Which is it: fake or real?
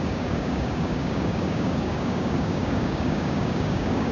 fake